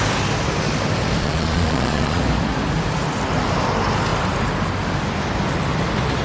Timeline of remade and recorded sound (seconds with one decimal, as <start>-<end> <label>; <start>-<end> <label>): 0.0-1.2 recorded; 1.2-2.2 remade; 2.2-6.2 recorded